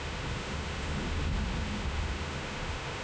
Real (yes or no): no